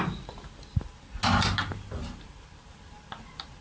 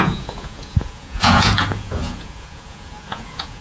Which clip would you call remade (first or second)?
second